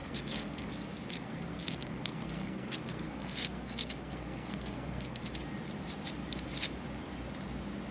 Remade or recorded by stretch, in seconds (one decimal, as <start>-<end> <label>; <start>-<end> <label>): 0.0-0.7 remade; 0.7-1.1 recorded; 1.1-5.2 remade; 5.2-7.9 recorded